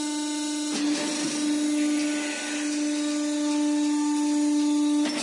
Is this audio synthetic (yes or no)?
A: no